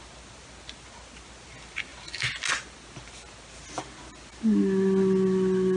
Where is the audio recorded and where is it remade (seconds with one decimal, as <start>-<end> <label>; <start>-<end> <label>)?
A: 0.0-5.8 recorded